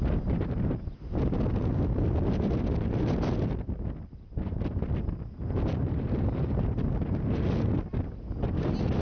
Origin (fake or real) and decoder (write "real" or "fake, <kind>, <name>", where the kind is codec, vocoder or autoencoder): real